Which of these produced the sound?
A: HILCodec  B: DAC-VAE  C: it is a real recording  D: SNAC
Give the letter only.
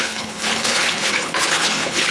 A